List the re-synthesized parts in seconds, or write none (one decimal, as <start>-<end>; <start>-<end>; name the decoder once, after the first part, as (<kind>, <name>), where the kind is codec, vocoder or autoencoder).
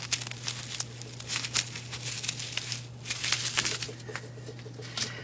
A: none